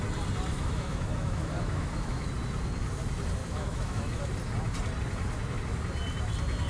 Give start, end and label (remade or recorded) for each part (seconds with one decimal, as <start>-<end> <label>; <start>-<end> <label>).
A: 0.0-0.5 recorded; 0.5-2.3 remade; 2.3-3.4 recorded; 3.4-4.2 remade; 4.2-6.7 recorded